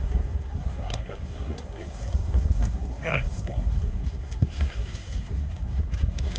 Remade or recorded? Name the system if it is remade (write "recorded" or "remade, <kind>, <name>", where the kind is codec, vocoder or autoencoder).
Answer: remade, codec, SNAC